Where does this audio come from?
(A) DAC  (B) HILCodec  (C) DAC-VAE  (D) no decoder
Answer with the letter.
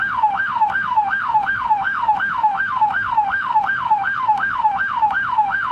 C